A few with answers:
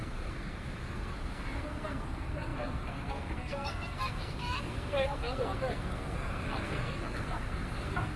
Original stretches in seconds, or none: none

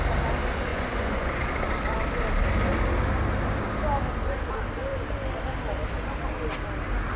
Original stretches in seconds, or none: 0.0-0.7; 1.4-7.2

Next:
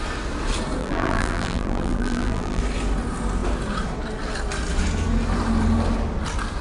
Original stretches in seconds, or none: 0.0-0.8; 2.6-6.6

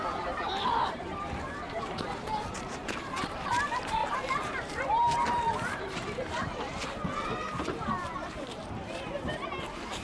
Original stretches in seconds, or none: 6.8-7.5

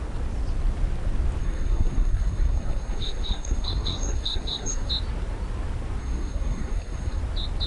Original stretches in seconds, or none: 0.0-1.4; 4.9-6.0; 7.2-7.7